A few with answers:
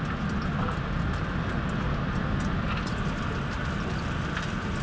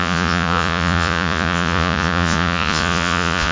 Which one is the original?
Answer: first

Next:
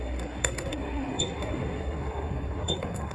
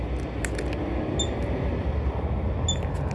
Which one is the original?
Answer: second